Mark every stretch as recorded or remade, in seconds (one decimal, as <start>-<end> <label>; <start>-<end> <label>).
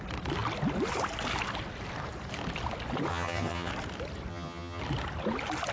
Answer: 0.0-3.1 recorded; 3.1-3.7 remade; 3.7-4.3 recorded; 4.3-4.8 remade; 4.8-5.7 recorded